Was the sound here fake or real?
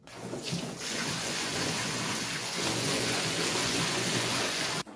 fake